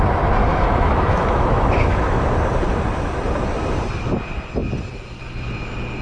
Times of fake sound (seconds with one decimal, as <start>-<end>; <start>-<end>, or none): 0.4-2.3